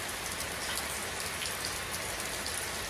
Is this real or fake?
real